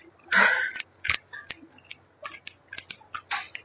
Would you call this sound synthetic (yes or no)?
no